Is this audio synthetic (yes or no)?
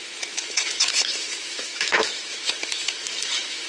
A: yes